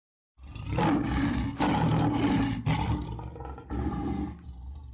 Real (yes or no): yes